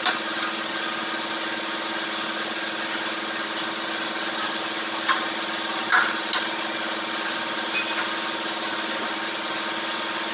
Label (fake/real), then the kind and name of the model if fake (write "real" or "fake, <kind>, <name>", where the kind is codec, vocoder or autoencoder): real